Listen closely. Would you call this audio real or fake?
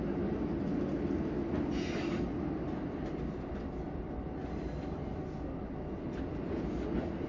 real